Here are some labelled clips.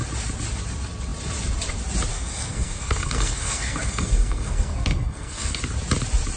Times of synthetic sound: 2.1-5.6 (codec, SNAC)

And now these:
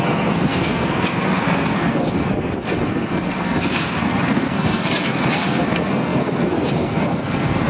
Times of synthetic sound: 0.0-7.7 (codec, SNAC)

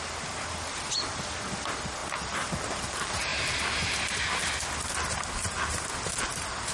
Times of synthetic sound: none

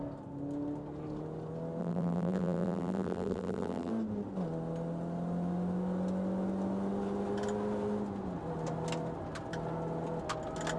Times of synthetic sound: 1.8-3.9 (vocoder, BigVGAN v2)

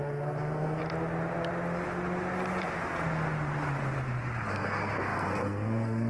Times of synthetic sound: 0.0-0.8 (codec, SNAC); 4.5-6.1

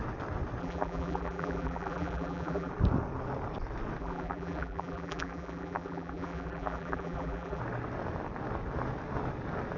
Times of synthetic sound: 0.6-2.7 (vocoder, BigVGAN v2); 4.0-7.6